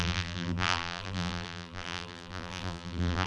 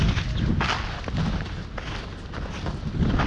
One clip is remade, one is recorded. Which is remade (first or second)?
first